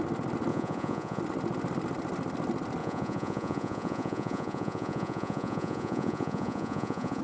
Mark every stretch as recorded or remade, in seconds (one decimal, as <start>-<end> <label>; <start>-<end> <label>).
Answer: 0.0-0.5 recorded; 0.5-1.2 remade; 1.2-2.8 recorded; 2.8-7.2 remade

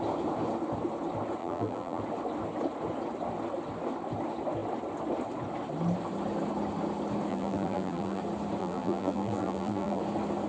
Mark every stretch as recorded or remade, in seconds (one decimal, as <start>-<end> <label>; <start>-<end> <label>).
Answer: 0.0-1.4 recorded; 1.4-2.0 remade; 2.0-7.3 recorded; 7.3-8.2 remade; 8.2-8.6 recorded; 8.6-10.0 remade; 10.0-10.5 recorded

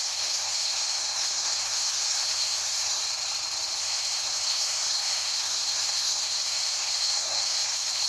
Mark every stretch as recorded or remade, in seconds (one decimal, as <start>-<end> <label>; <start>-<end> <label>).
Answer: 0.0-3.0 remade; 3.0-3.8 recorded; 3.8-8.1 remade

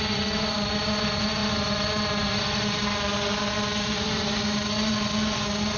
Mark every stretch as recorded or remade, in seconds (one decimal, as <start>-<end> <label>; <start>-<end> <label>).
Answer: 0.0-5.8 recorded

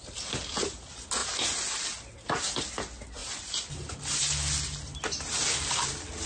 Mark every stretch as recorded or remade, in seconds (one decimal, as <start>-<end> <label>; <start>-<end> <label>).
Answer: 0.0-6.3 recorded

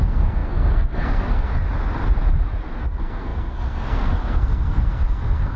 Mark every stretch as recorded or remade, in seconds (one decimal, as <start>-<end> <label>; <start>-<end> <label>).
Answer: 0.0-1.5 remade; 1.5-2.8 recorded; 2.8-5.6 remade